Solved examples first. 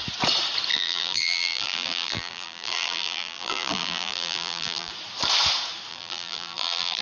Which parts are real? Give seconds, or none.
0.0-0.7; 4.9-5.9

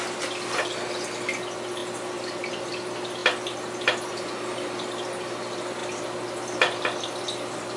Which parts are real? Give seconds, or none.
0.0-7.8

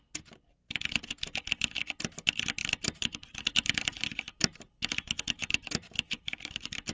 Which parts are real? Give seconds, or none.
0.0-2.6